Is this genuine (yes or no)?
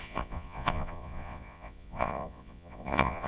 no